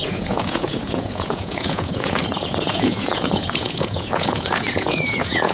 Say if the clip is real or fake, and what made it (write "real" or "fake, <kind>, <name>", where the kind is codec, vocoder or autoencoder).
fake, vocoder, Vocos